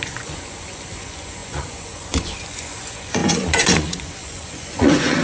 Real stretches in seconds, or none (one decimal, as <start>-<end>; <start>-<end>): none